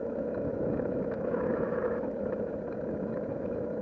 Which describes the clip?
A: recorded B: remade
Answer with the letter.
B